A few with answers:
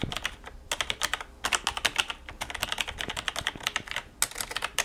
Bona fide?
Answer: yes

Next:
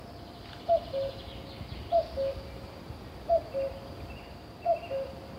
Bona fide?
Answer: yes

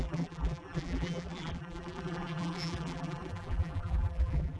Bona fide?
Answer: no